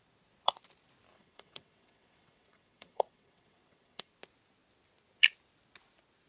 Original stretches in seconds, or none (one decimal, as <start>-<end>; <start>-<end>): 0.0-1.1; 4.1-6.3